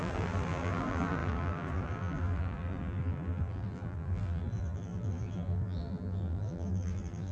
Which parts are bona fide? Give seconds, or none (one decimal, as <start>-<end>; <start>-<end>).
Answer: none